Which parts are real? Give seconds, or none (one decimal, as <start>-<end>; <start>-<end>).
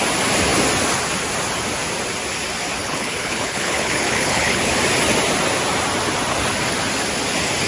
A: 0.0-2.8; 4.7-7.7